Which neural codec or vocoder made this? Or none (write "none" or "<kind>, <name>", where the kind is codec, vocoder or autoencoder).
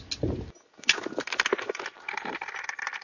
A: none